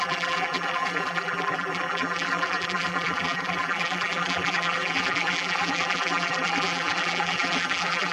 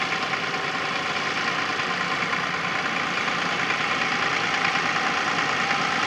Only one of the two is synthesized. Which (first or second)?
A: first